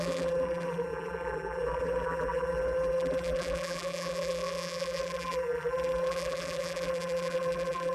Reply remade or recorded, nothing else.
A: remade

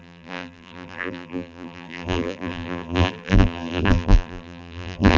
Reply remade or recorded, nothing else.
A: remade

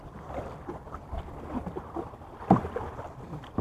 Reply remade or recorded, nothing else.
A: remade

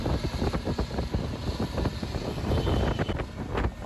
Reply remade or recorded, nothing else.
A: recorded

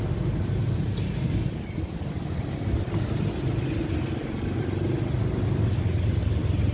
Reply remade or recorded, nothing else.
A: recorded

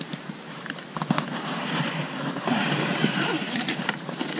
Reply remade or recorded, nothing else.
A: remade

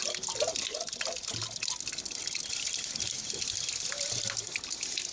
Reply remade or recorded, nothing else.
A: recorded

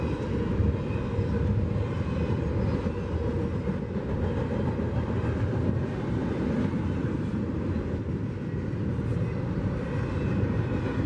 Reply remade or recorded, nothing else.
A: recorded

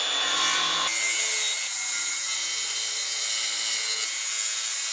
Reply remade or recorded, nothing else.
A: recorded